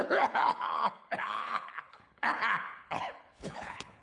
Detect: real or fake fake